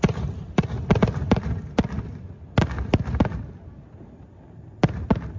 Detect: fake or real real